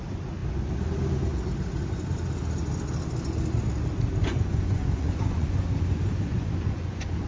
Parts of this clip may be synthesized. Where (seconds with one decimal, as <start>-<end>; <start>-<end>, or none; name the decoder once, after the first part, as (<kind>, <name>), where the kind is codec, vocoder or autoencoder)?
4.2-7.3 (vocoder, Vocos)